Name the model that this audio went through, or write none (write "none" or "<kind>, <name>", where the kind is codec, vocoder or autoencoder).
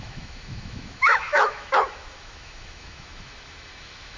autoencoder, DAC-VAE